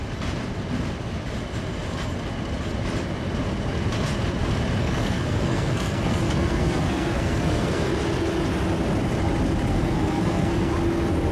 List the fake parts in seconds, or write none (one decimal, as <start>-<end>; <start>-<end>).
4.8-7.9; 9.7-10.7

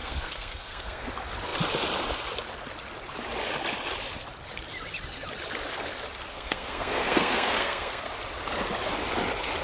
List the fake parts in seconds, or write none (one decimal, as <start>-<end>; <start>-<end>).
0.0-1.1; 6.3-8.1

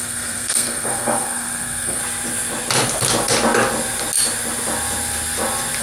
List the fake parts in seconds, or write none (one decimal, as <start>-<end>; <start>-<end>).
0.0-2.0